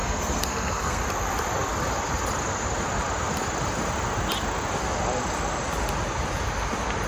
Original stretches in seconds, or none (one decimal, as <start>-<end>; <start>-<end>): 1.0-7.1